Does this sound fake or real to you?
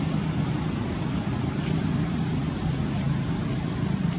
fake